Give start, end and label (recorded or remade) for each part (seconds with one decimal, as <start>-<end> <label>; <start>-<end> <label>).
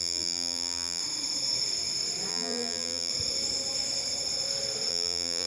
0.0-1.0 remade; 1.0-2.3 recorded; 2.3-3.1 remade; 3.1-4.9 recorded; 4.9-5.5 remade